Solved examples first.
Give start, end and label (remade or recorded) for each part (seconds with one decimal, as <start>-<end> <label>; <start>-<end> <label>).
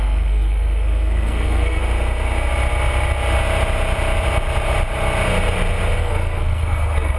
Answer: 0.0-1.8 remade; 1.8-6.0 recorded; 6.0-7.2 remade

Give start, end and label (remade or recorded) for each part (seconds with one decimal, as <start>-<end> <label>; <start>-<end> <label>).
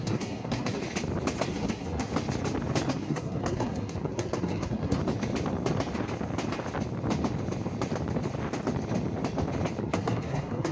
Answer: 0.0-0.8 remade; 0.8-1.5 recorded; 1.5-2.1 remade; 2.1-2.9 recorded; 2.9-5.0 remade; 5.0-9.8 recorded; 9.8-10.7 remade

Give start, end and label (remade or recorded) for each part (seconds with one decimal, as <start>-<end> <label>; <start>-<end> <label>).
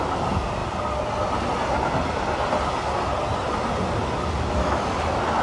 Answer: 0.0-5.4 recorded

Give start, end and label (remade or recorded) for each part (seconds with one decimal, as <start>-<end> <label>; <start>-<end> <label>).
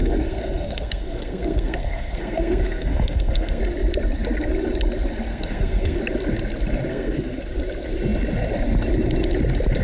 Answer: 0.0-3.6 remade; 3.6-5.3 recorded; 5.3-6.0 remade; 6.0-6.9 recorded; 6.9-7.4 remade; 7.4-9.8 recorded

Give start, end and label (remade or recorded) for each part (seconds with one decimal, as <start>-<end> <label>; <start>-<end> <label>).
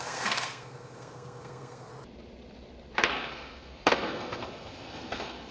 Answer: 0.0-1.9 remade; 1.9-3.1 recorded; 3.1-5.5 remade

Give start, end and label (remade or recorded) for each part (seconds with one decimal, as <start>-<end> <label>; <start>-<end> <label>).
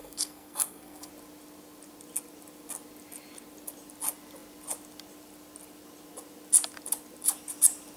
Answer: 0.0-1.1 remade; 1.1-8.0 recorded